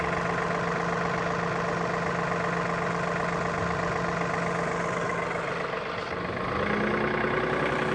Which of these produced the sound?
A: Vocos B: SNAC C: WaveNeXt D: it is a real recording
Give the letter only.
D